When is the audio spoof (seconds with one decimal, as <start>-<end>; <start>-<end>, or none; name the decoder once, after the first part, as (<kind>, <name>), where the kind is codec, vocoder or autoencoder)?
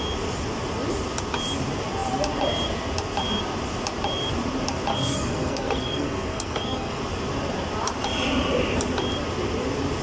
4.9-7.0 (codec, SNAC)